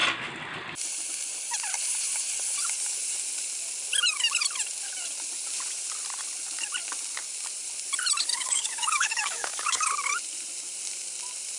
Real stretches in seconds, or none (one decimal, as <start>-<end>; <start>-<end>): 0.0-8.3; 9.9-11.6